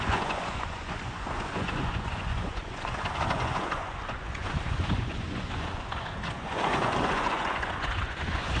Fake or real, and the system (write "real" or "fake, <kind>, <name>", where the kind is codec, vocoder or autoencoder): fake, vocoder, Vocos